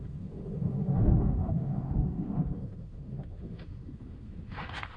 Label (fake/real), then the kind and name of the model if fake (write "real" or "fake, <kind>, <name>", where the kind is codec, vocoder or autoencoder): fake, autoencoder, DAC-VAE